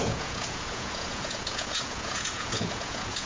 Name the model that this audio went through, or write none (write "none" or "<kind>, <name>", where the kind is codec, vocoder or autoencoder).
vocoder, Vocos